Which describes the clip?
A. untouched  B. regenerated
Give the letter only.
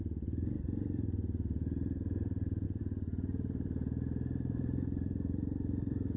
B